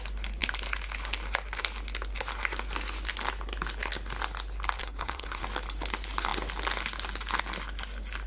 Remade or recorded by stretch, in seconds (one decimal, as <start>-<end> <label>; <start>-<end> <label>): 0.0-4.8 recorded; 4.8-5.4 remade; 5.4-8.3 recorded